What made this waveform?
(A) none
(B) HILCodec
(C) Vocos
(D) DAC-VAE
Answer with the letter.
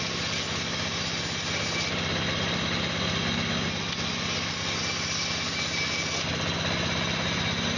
A